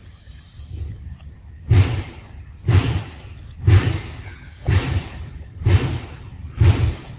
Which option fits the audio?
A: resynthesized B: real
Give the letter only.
A